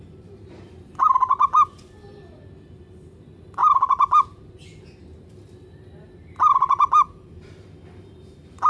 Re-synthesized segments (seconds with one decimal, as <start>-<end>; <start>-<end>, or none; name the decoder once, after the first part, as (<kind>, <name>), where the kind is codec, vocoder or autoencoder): none